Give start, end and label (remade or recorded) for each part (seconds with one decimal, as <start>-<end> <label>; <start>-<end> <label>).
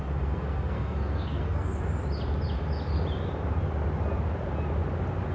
0.0-1.7 remade; 1.7-5.3 recorded